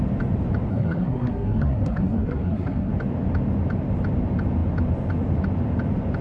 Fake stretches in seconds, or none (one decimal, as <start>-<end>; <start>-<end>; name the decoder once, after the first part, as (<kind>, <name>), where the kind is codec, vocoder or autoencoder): 0.7-2.9 (codec, SNAC)